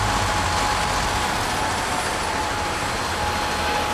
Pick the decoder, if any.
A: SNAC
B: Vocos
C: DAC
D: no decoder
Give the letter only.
D